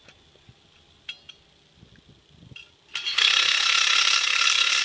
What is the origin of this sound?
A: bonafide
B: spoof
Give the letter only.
A